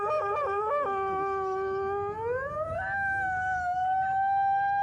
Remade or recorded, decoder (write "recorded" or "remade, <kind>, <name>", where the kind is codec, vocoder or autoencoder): recorded